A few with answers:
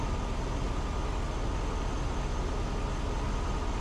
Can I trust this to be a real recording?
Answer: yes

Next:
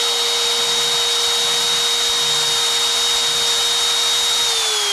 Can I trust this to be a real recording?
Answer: yes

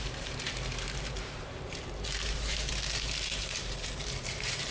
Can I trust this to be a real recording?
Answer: no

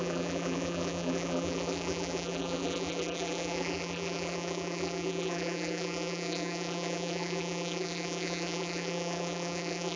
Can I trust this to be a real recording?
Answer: no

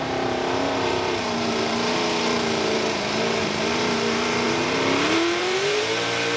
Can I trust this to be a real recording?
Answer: no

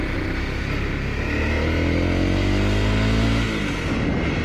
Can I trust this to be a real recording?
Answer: yes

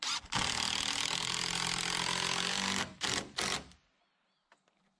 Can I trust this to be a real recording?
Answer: yes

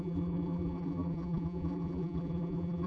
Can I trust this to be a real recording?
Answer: no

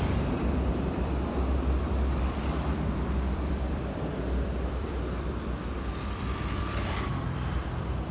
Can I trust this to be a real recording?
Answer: no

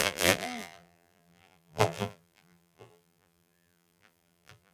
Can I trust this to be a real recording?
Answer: no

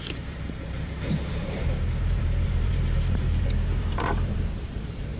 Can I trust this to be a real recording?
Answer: no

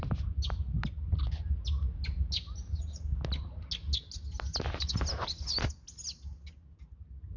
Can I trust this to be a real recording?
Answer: yes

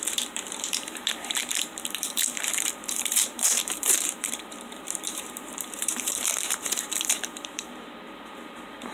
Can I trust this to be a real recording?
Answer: no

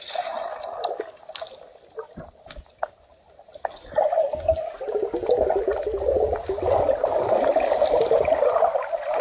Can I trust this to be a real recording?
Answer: yes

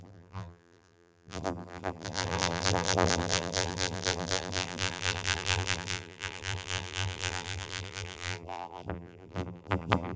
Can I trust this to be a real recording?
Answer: no